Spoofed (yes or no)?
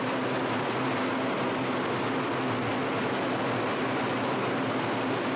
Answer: no